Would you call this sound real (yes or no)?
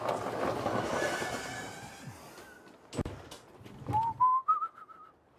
yes